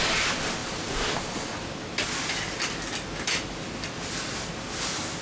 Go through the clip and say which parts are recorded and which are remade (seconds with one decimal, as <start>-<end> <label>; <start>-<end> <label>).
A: 0.0-5.2 recorded